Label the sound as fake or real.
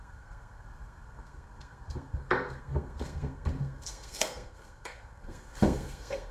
fake